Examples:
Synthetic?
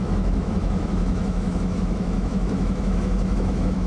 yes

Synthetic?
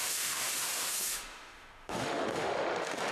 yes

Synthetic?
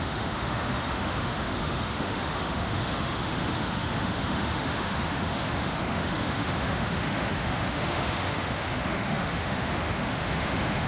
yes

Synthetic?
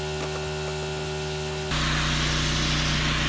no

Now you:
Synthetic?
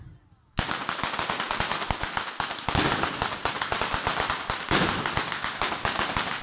no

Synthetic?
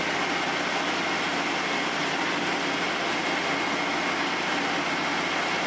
no